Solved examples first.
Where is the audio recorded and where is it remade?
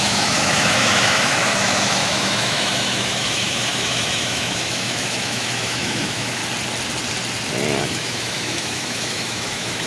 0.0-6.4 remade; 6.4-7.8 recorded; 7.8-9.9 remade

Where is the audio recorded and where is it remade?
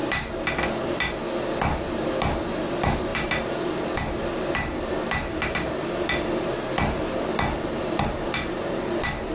0.0-9.3 recorded